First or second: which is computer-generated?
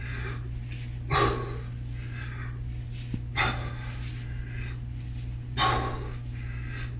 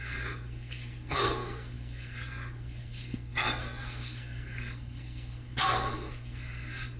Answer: second